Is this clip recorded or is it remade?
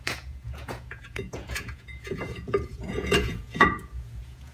remade